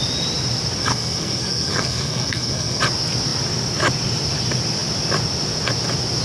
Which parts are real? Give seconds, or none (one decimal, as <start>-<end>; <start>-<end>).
0.0-0.8; 2.8-6.2